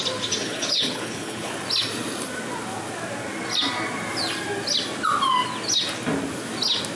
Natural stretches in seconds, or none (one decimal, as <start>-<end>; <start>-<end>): 0.0-0.4; 1.5-7.0